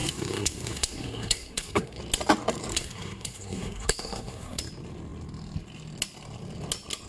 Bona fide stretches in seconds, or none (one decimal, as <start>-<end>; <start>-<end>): 2.0-2.7; 4.6-7.1